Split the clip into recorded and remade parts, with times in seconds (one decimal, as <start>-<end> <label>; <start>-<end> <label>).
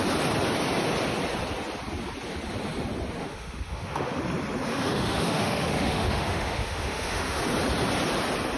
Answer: 0.0-3.2 recorded; 3.2-4.2 remade; 4.2-4.7 recorded; 4.7-7.4 remade; 7.4-8.6 recorded